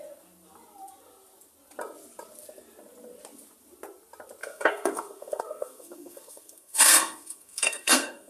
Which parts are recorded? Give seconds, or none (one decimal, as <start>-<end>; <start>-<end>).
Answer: 0.0-4.4